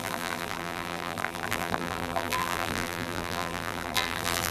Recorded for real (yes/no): no